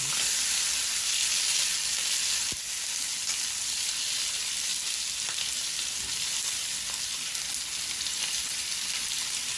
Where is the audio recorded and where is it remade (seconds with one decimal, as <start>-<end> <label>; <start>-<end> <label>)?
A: 0.0-9.6 recorded